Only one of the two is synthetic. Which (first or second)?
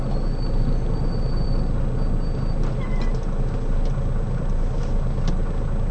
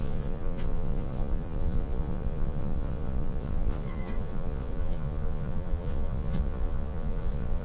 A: second